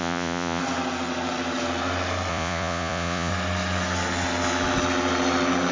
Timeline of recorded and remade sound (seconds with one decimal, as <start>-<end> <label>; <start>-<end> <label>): 0.0-0.6 remade; 0.6-2.3 recorded; 2.3-3.3 remade; 3.3-5.7 recorded